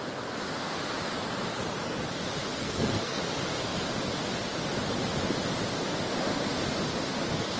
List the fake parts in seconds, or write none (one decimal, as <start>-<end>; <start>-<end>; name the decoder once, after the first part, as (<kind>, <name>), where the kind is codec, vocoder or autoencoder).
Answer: 2.5-3.2 (codec, SNAC)